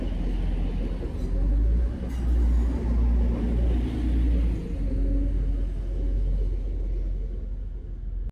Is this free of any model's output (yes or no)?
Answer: yes